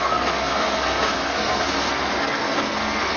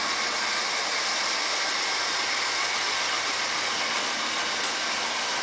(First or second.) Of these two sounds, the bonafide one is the second